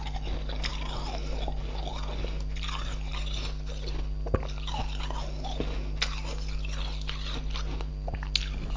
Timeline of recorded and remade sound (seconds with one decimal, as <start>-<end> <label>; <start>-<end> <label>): 0.0-8.8 recorded